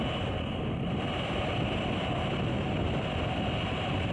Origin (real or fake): real